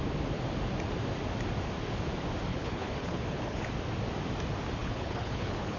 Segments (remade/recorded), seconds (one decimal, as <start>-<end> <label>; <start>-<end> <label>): 0.0-2.5 recorded; 2.5-3.7 remade; 3.7-4.8 recorded; 4.8-5.8 remade